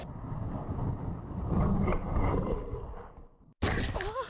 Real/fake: real